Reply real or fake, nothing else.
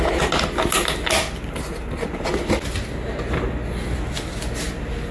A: real